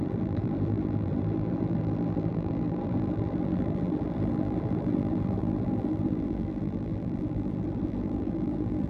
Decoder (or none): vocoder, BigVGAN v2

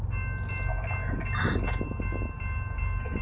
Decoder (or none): none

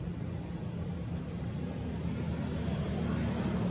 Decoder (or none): none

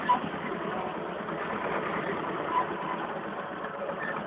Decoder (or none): none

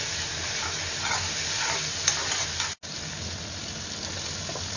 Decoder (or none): none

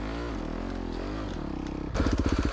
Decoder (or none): none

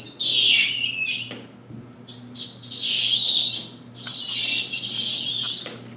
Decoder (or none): none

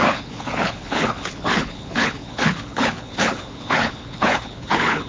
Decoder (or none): codec, HILCodec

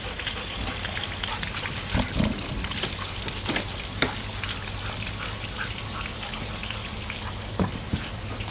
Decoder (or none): none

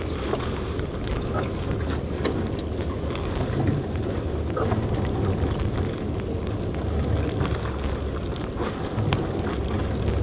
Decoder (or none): none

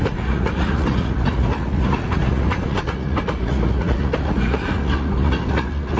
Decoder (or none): vocoder, Vocos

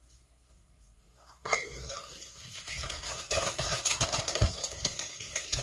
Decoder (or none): codec, SNAC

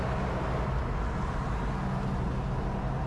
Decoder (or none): none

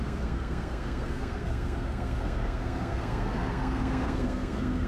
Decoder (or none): codec, SNAC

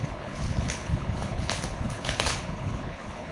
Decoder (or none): codec, HILCodec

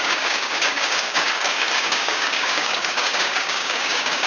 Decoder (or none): codec, DAC